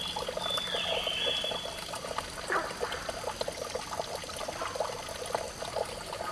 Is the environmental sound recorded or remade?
recorded